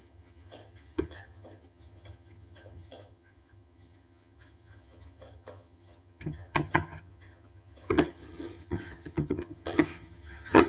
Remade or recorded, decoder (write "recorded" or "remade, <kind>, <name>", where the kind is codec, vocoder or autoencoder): remade, vocoder, HiFi-GAN